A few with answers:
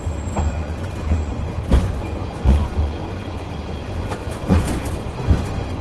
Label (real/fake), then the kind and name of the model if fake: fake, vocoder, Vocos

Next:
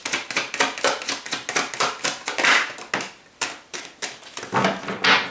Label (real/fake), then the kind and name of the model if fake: real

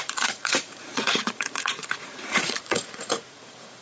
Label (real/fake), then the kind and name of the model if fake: fake, vocoder, Vocos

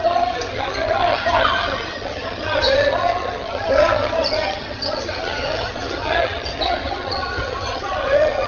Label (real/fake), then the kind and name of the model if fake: fake, vocoder, HiFi-GAN